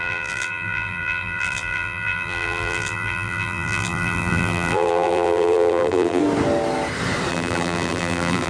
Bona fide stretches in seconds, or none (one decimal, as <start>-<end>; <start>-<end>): 6.2-7.3

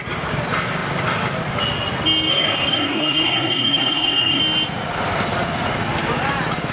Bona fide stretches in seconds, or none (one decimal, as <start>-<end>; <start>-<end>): 0.0-2.3; 4.4-6.7

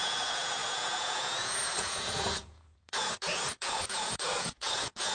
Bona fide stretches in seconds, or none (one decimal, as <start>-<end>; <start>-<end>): none

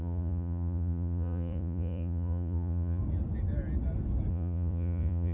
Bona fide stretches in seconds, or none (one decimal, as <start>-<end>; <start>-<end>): 3.0-4.3